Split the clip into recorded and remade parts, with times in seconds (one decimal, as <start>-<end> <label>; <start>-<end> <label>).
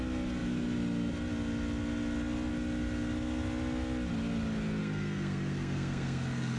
0.0-4.8 recorded; 4.8-6.6 remade